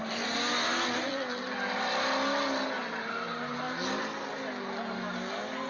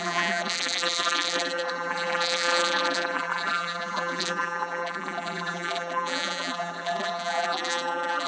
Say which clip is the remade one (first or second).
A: second